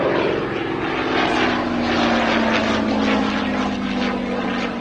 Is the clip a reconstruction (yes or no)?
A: no